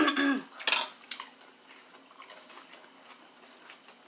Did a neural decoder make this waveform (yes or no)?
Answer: no